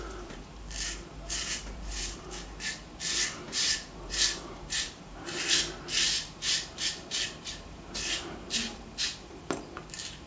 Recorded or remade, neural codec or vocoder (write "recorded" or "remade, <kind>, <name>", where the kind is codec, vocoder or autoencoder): remade, vocoder, BigVGAN v2